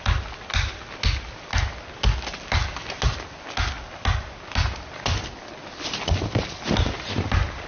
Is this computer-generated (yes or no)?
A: no